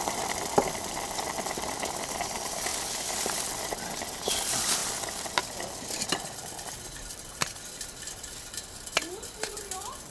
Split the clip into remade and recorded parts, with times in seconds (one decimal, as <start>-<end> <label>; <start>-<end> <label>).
0.0-2.7 remade; 2.7-3.6 recorded; 3.6-10.1 remade